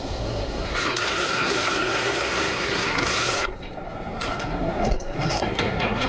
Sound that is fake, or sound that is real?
fake